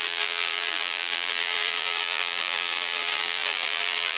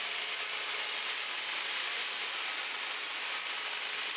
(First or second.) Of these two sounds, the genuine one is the second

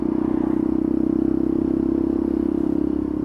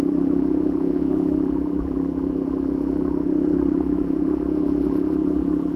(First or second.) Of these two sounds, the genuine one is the first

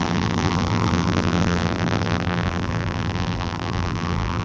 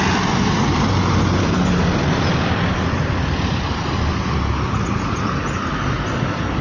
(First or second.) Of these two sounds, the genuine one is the second